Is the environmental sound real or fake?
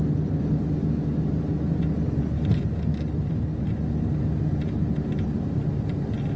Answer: real